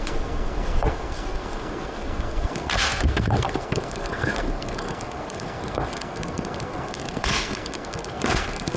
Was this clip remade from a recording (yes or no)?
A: yes